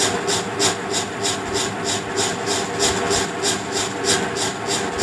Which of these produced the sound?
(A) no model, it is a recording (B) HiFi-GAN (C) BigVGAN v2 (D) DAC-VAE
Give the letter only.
A